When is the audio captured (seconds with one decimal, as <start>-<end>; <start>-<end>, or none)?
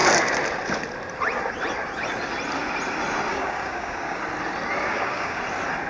0.0-3.3; 4.2-4.9; 5.4-5.9